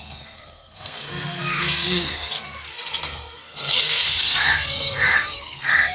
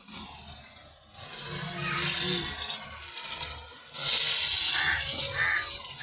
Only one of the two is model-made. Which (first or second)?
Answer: first